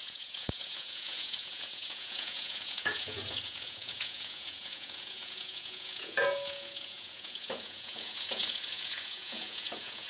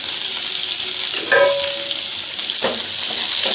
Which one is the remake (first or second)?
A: first